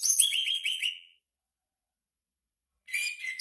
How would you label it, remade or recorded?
remade